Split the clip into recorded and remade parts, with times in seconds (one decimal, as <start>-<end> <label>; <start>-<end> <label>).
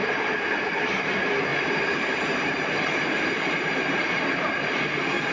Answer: 0.0-5.3 remade